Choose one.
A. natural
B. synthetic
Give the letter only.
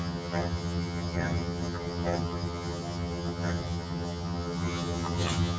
B